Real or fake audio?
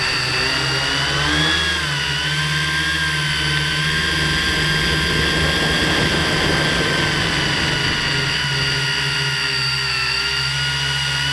real